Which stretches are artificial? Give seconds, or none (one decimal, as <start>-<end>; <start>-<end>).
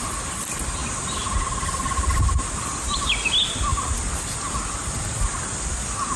none